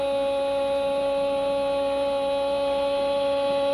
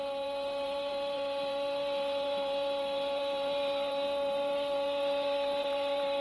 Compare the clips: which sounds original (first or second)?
first